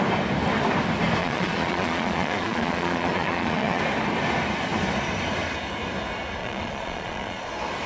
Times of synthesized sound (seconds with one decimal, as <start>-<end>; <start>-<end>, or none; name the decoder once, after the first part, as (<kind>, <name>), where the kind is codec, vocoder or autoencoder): 1.2-3.8 (vocoder, Vocos); 6.4-7.5